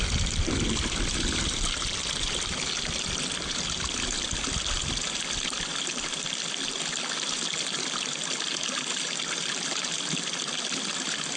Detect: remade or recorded recorded